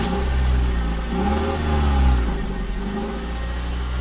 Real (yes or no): yes